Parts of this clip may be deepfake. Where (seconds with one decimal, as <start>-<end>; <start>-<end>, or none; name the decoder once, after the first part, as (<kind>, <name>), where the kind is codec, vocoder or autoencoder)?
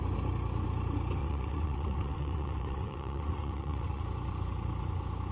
1.2-4.0 (vocoder, WaveNeXt)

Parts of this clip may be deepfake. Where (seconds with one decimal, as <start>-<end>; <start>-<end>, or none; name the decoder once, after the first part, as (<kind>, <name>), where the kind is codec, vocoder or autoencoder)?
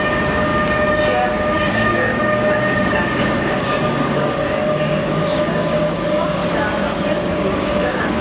0.0-6.4 (codec, DAC); 7.3-8.2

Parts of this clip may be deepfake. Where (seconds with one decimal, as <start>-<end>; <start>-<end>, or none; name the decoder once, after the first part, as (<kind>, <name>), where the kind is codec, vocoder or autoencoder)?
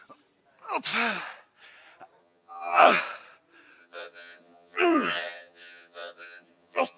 2.2-3.0 (vocoder, HiFi-GAN); 3.8-7.0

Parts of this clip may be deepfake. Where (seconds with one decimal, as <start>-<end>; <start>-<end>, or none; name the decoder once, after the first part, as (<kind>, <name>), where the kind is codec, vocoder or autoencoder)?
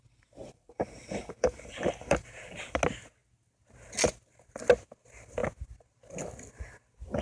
0.4-2.6 (vocoder, BigVGAN v2)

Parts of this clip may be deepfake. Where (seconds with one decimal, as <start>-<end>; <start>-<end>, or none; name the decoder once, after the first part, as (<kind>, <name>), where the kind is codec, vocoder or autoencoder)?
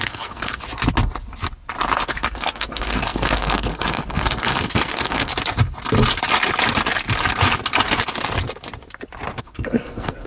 0.0-0.6 (codec, SNAC); 2.0-5.3; 9.4-10.3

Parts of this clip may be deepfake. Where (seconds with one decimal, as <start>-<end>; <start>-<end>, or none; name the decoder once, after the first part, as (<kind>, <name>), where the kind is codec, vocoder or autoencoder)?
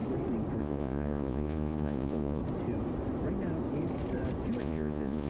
0.6-2.4 (vocoder, Vocos); 4.6-5.3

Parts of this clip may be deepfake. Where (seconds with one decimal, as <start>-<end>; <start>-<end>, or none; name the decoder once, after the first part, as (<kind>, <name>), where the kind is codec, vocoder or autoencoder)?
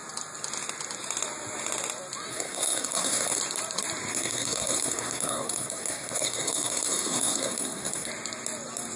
2.3-3.4 (codec, SNAC); 4.1-8.1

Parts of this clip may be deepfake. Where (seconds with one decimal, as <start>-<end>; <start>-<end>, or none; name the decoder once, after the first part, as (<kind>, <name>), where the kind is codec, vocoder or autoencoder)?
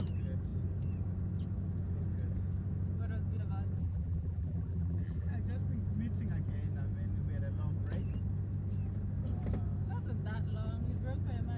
3.8-5.3 (vocoder, BigVGAN v2)